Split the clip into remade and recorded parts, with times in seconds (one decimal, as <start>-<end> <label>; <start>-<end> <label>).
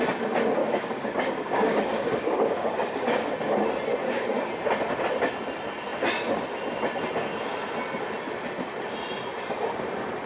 0.0-0.6 recorded; 0.6-3.3 remade; 3.3-4.0 recorded; 4.0-4.5 remade; 4.5-10.3 recorded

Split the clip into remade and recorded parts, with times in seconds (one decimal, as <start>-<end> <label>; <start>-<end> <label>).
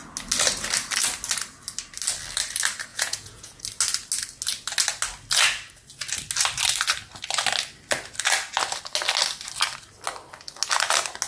0.0-2.9 recorded; 2.9-3.6 remade; 3.6-11.3 recorded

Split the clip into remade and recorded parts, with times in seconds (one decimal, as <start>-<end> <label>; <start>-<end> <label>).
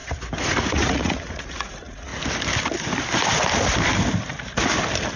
0.0-0.6 recorded; 0.6-2.1 remade; 2.1-5.2 recorded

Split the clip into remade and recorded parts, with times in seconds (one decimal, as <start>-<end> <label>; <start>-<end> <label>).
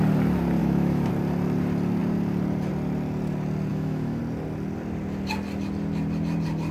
0.0-0.6 recorded; 0.6-1.1 remade; 1.1-3.7 recorded; 3.7-4.2 remade; 4.2-6.7 recorded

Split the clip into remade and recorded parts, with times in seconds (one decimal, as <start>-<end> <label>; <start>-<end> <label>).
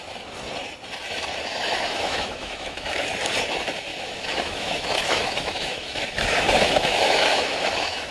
0.0-1.5 recorded; 1.5-3.0 remade; 3.0-3.9 recorded; 3.9-8.1 remade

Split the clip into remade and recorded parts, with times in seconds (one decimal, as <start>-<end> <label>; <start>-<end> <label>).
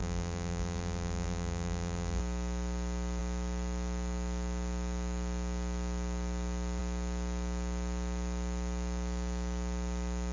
0.0-2.2 remade; 2.2-10.3 recorded